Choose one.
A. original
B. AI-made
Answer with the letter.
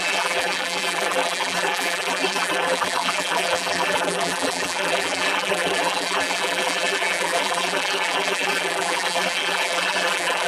B